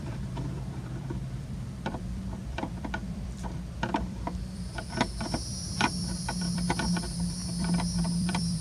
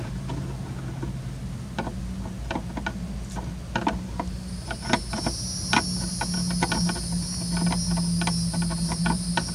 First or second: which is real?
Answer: second